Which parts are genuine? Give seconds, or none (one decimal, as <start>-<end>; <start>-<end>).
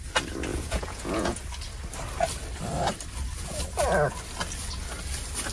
0.0-0.5; 1.4-5.5